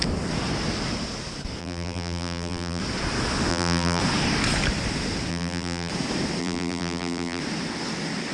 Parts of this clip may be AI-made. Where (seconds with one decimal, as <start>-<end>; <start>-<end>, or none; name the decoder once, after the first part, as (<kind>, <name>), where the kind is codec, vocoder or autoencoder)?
1.6-2.8 (vocoder, BigVGAN v2); 3.5-4.0; 5.3-5.9; 6.4-7.4